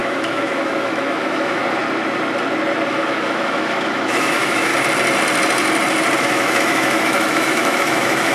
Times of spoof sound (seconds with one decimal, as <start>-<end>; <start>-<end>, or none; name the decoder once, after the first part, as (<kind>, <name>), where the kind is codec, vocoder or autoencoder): 0.0-1.6 (autoencoder, DAC-VAE); 2.9-4.7; 6.2-8.3